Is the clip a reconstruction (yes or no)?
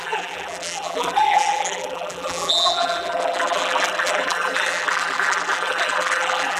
yes